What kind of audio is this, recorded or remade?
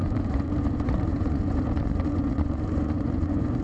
remade